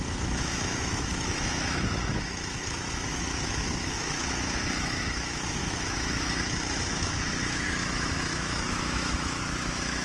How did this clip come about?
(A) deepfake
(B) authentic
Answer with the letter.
A